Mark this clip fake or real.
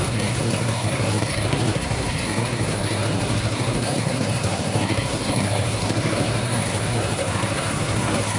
fake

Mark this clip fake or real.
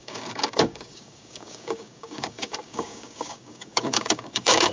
fake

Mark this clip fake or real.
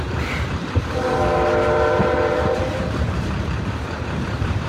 fake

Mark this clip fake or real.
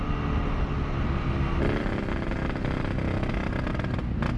real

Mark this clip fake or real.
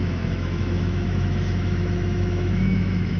fake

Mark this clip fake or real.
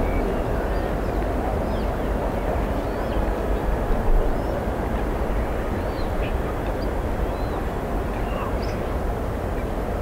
real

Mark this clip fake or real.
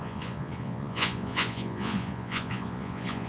fake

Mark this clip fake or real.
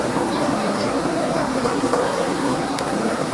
fake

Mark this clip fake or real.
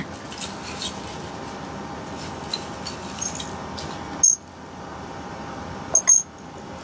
real